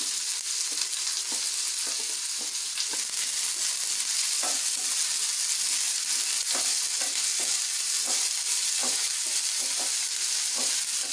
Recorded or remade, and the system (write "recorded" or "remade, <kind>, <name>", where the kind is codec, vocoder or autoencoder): recorded